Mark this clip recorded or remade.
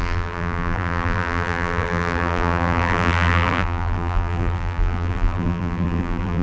remade